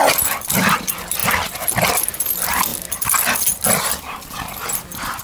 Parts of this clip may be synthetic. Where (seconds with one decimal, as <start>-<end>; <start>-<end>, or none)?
none